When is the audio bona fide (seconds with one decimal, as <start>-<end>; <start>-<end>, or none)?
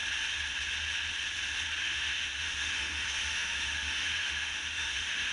0.0-1.8